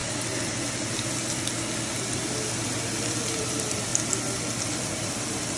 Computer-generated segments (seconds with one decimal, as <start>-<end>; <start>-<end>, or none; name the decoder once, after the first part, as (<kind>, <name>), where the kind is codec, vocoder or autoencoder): 3.4-3.9 (vocoder, BigVGAN v2); 4.8-5.6